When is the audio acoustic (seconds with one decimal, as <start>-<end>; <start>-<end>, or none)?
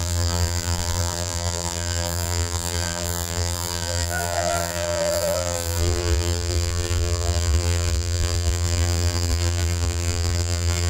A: none